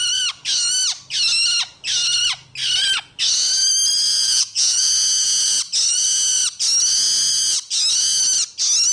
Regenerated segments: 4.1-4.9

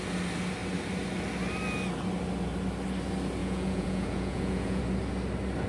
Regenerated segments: 3.4-4.8

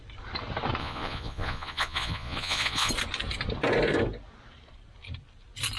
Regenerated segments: 0.8-2.9

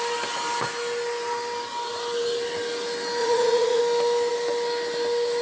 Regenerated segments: 3.2-3.8

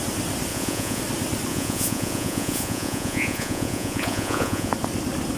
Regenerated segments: 0.5-1.0; 1.5-4.7